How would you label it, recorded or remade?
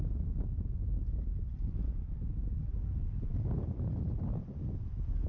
recorded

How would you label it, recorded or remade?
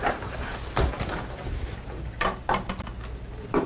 recorded